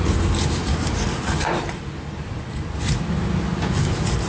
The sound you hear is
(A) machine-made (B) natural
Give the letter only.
B